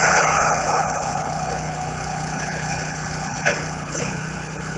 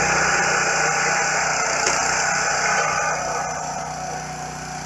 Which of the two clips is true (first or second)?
second